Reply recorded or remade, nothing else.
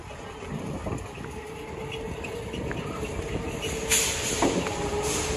recorded